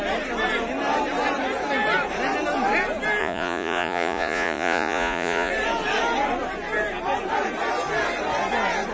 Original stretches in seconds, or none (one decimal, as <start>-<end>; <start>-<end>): 0.0-3.2; 5.5-8.9